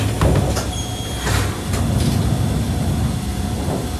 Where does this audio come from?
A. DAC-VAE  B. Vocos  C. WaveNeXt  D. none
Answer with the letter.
D